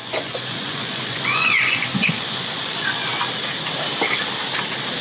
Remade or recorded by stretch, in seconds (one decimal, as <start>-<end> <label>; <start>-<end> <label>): 0.0-3.1 remade; 3.1-5.0 recorded